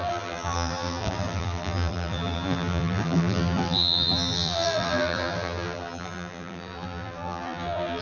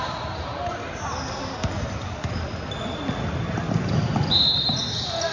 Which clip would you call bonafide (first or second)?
second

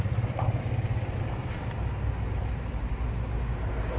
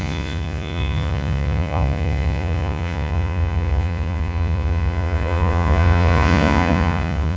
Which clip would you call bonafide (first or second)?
first